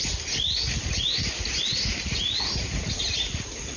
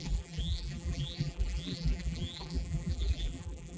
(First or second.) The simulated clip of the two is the second